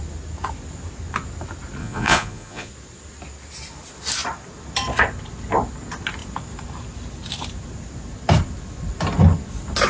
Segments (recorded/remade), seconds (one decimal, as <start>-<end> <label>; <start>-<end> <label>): 0.0-1.8 recorded; 1.8-2.7 remade; 2.7-9.9 recorded